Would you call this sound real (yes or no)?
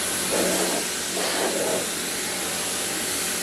yes